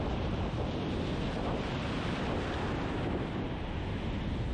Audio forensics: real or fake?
real